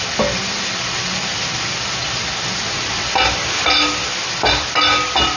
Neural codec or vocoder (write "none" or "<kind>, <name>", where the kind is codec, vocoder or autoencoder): none